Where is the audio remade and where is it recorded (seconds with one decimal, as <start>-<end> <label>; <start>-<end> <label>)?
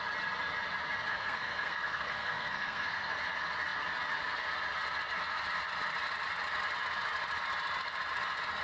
0.0-1.1 recorded; 1.1-3.1 remade; 3.1-8.6 recorded